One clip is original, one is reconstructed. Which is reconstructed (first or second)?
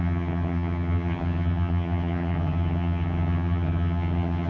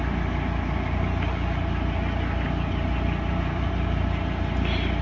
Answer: first